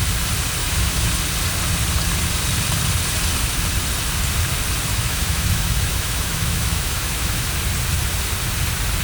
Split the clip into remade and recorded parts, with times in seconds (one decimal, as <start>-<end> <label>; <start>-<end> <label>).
0.0-0.6 recorded; 0.6-1.1 remade; 1.1-4.9 recorded; 4.9-7.5 remade; 7.5-9.0 recorded

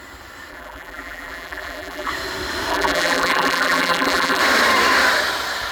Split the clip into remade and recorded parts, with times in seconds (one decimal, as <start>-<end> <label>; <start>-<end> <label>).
0.0-0.5 recorded; 0.5-2.1 remade; 2.1-2.7 recorded; 2.7-4.4 remade; 4.4-5.7 recorded

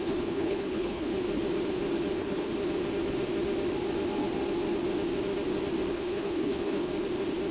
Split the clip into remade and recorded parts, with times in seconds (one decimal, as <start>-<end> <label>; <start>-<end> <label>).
0.0-1.1 remade; 1.1-2.1 recorded; 2.1-2.5 remade; 2.5-5.9 recorded; 5.9-6.9 remade; 6.9-7.5 recorded